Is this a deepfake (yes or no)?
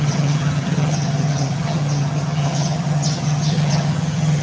yes